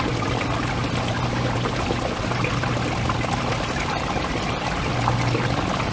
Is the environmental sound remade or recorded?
recorded